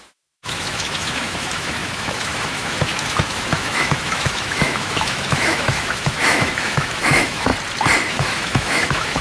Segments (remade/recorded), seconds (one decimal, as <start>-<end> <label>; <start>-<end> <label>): 0.0-7.5 remade; 7.5-8.1 recorded; 8.1-9.2 remade